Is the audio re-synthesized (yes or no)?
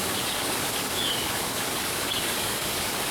yes